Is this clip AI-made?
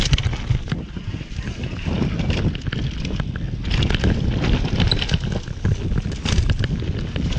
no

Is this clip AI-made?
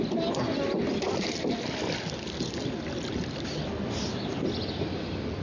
no